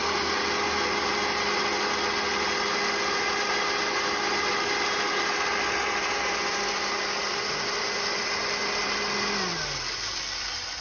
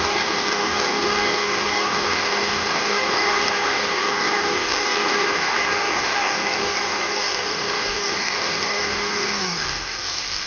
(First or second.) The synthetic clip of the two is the second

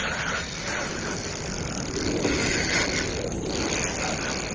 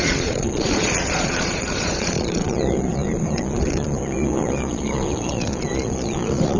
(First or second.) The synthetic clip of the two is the second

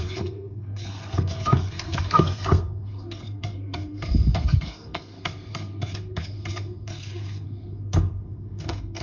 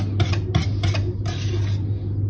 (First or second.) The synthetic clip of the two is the first